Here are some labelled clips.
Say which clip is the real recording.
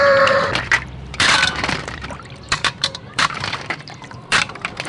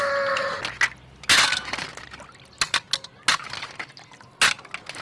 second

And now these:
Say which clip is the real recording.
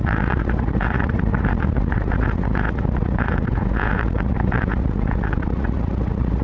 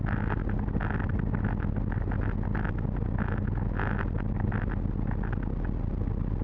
second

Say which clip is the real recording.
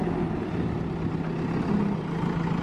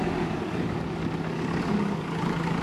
first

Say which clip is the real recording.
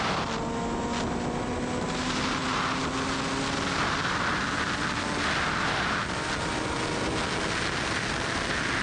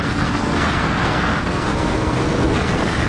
first